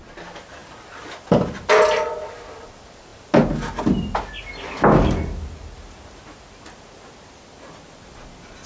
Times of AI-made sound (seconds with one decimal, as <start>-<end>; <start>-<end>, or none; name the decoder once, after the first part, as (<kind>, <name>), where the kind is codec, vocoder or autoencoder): none